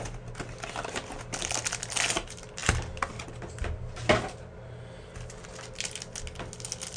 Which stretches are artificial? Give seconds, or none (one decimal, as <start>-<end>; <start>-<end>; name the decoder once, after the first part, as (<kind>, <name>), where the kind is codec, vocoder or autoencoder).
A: none